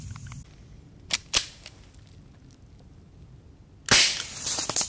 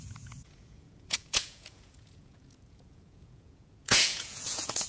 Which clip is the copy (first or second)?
second